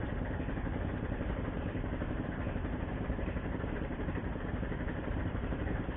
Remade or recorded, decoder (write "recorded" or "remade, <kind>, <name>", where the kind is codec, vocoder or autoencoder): remade, vocoder, BigVGAN v2